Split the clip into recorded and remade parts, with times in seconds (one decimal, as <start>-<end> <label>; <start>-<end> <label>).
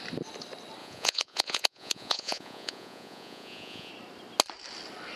0.0-0.8 recorded; 0.8-3.9 remade; 3.9-5.2 recorded